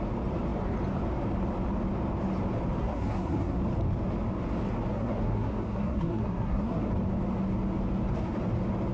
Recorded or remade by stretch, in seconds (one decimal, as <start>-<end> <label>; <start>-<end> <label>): 0.0-2.8 recorded; 2.8-3.6 remade; 3.6-4.9 recorded; 4.9-6.9 remade; 6.9-8.9 recorded